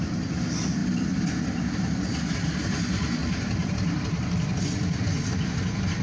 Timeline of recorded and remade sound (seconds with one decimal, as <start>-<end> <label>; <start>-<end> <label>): 0.0-0.8 recorded; 0.8-1.7 remade; 1.7-3.2 recorded; 3.2-5.0 remade; 5.0-6.0 recorded